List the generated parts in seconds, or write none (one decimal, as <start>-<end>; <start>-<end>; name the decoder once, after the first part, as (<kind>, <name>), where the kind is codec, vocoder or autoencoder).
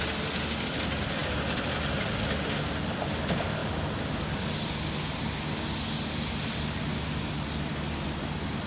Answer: none